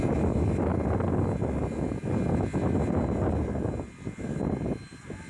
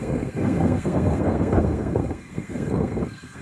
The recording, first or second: first